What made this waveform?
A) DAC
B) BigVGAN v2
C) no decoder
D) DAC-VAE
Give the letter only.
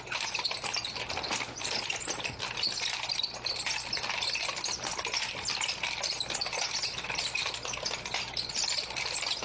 C